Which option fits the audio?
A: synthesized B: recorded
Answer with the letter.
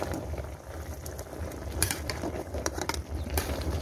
A